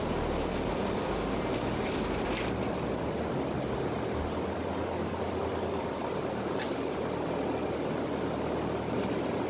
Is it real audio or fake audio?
real